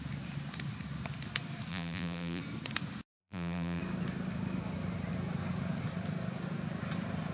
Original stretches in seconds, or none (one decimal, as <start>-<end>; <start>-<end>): 0.0-1.7; 2.4-3.1; 3.8-7.3